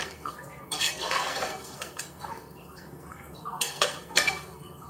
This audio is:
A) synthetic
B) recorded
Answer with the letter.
A